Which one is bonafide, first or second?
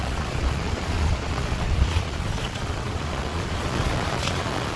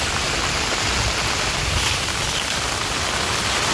second